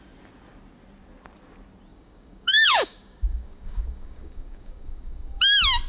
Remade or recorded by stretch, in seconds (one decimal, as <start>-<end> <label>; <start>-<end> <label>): 0.0-1.9 recorded; 1.9-5.4 remade; 5.4-5.9 recorded